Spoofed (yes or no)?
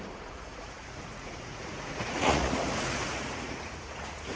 yes